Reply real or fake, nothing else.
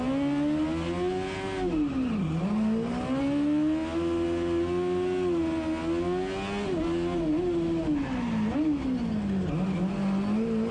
real